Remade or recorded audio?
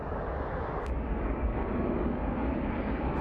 remade